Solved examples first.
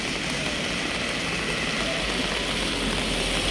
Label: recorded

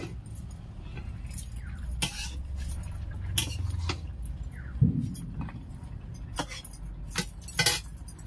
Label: recorded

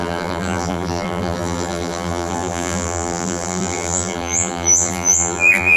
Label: remade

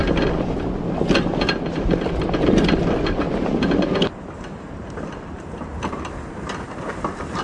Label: recorded